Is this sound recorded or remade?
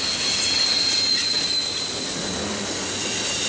recorded